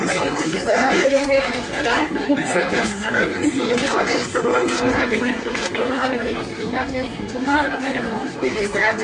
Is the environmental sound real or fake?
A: fake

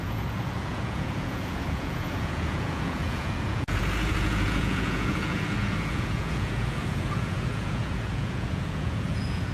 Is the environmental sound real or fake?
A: fake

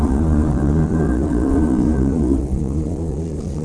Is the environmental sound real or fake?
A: fake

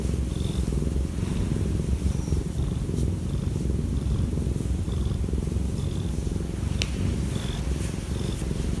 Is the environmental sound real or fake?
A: real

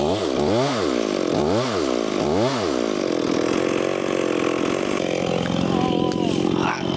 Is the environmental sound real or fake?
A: real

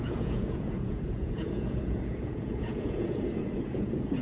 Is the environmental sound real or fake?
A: fake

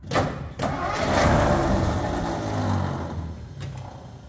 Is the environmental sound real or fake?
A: real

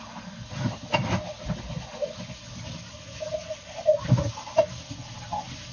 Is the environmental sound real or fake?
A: real